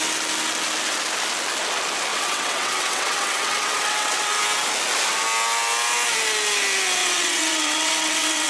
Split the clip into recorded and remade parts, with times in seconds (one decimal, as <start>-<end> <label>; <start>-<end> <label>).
0.0-2.1 recorded; 2.1-4.4 remade; 4.4-7.0 recorded; 7.0-8.5 remade